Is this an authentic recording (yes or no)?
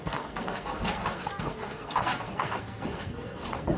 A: no